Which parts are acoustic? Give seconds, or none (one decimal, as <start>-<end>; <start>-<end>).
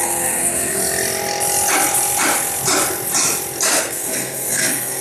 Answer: 0.8-3.8